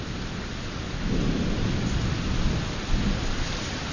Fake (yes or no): no